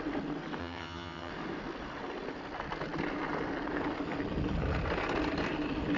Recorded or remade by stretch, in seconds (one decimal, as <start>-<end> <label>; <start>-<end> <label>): 0.0-0.6 recorded; 0.6-1.3 remade; 1.3-6.0 recorded